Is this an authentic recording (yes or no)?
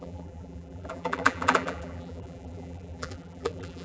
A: no